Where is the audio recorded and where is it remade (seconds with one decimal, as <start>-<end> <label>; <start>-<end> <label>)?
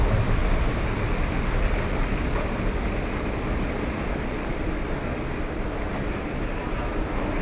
0.0-7.4 recorded